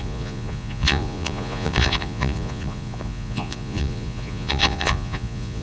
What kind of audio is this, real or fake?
fake